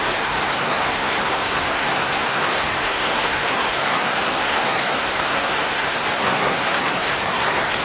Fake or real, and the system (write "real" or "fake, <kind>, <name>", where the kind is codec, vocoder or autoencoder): fake, codec, SNAC